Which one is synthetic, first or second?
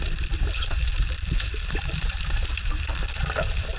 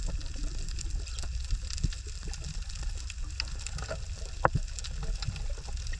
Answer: first